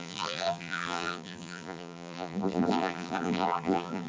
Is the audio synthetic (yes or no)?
yes